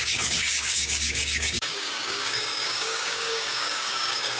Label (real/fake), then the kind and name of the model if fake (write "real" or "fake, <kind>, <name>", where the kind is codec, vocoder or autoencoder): fake, codec, DAC